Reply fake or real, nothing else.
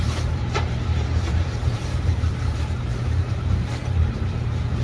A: fake